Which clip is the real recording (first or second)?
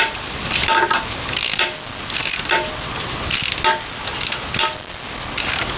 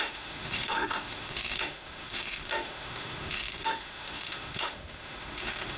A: first